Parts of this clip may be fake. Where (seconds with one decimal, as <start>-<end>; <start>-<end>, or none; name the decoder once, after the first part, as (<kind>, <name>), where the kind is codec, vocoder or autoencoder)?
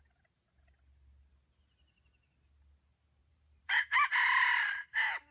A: 3.3-4.1 (vocoder, BigVGAN v2); 4.5-5.3